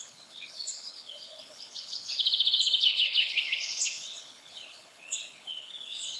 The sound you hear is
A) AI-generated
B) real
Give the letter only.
A